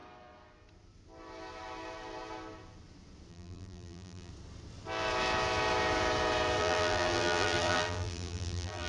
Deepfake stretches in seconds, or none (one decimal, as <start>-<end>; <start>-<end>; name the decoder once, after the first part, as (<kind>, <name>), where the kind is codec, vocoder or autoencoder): 3.3-4.3 (vocoder, BigVGAN v2); 6.6-8.9